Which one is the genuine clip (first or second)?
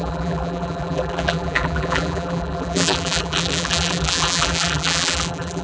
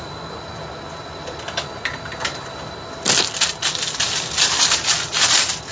second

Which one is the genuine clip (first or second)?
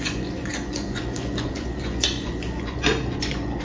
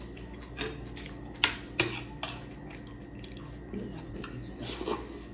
second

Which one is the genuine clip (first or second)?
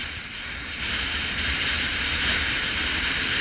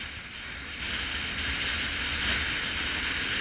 second